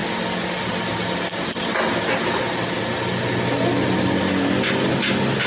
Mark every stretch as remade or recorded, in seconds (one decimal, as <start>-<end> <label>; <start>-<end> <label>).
0.0-5.5 recorded